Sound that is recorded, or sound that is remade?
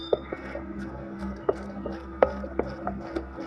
remade